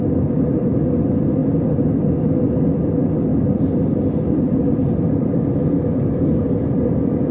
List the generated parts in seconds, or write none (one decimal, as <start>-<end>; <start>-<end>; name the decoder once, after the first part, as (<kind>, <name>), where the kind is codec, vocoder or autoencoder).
3.3-4.5 (vocoder, BigVGAN v2)